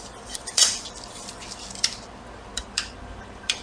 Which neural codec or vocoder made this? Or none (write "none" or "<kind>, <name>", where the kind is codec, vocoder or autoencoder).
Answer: vocoder, BigVGAN v2